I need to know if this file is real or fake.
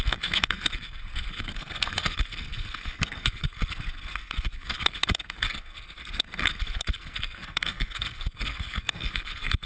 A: fake